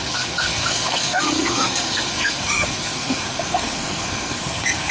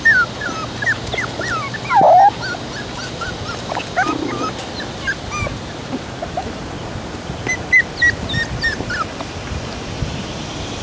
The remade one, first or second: first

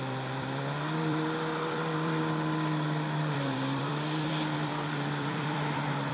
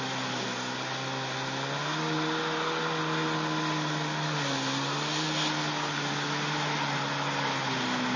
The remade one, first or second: first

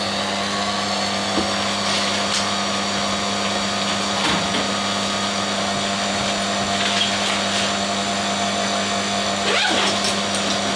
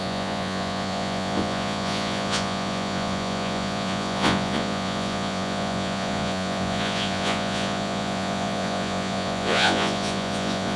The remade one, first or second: second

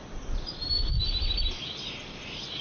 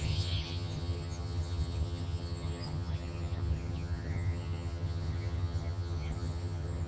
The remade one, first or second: second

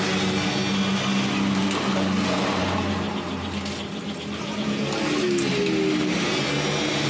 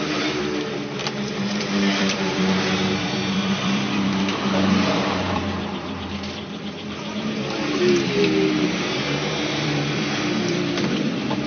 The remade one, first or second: second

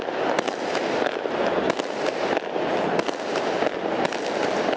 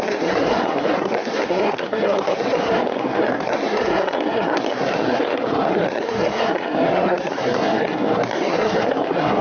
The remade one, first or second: second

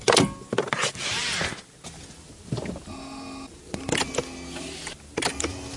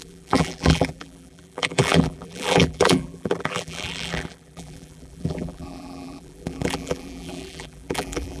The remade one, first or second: second